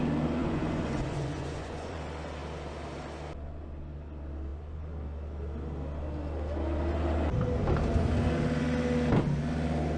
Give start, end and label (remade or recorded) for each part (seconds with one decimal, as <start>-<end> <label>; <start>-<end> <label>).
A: 0.0-0.4 recorded; 0.4-2.0 remade; 2.0-10.0 recorded